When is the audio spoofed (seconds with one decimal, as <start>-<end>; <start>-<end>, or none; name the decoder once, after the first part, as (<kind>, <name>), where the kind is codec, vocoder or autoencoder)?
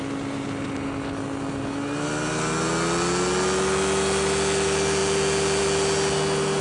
none